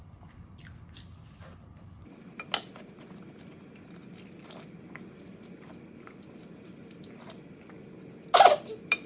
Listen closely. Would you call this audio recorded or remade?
recorded